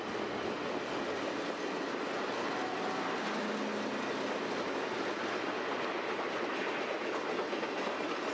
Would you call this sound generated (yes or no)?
no